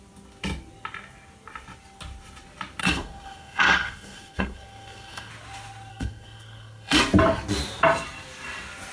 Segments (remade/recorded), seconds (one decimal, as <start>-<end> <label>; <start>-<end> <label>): 0.0-2.8 recorded; 2.8-5.3 remade; 5.3-5.9 recorded; 5.9-7.0 remade; 7.0-8.9 recorded